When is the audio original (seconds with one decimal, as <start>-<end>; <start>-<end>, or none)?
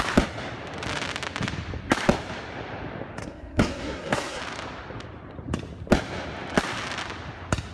0.0-3.2; 4.4-7.7